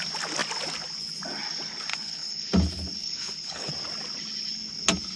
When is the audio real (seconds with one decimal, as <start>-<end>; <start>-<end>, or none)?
0.0-1.9; 2.5-3.0; 3.7-5.2